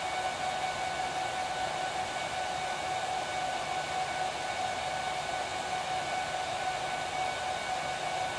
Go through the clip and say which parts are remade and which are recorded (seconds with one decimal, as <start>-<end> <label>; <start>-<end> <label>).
0.0-8.4 recorded

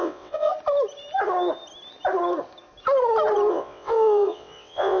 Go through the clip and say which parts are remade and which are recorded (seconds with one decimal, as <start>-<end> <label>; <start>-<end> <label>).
0.0-0.5 remade; 0.5-3.5 recorded; 3.5-5.0 remade

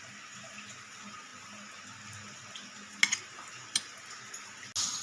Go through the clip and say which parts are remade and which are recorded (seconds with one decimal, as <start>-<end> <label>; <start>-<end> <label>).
0.0-5.0 recorded